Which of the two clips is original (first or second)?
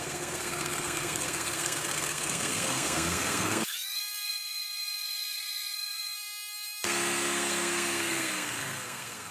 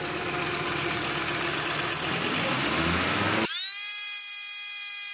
second